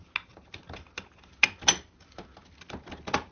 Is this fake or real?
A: real